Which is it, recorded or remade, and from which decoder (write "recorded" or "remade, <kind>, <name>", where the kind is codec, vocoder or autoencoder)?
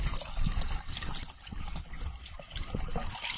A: recorded